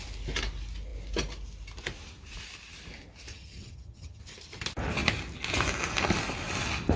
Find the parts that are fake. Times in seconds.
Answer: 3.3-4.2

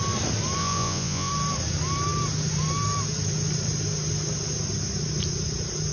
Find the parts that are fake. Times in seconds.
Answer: 0.6-1.3

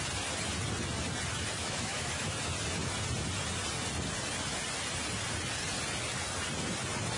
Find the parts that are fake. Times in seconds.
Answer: 1.6-2.3

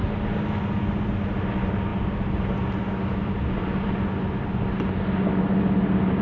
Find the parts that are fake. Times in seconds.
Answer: none

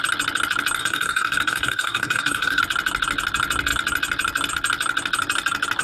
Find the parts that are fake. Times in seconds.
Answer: 0.8-2.6

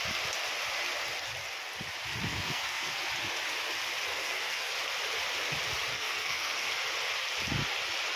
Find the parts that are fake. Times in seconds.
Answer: 2.3-3.0; 4.1-4.7; 5.9-6.7